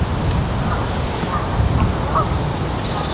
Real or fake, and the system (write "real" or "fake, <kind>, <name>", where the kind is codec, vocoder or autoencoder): real